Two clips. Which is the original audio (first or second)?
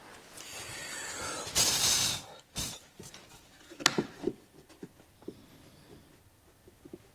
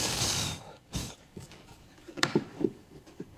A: first